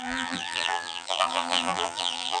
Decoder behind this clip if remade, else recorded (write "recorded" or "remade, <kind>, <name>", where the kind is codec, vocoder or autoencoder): remade, vocoder, BigVGAN v2